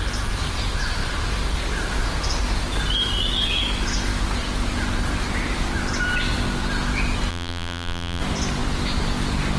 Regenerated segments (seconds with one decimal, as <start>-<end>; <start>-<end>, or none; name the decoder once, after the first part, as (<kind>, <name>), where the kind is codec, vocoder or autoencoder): 7.3-8.2 (vocoder, BigVGAN v2)